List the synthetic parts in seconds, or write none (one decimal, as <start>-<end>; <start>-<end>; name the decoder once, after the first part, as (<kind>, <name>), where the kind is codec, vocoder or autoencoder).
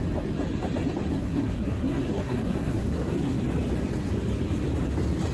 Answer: 1.1-3.4 (codec, SNAC)